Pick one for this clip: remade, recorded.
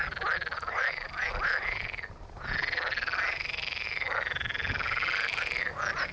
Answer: recorded